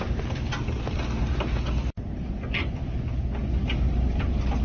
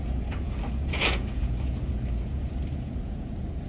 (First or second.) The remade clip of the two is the second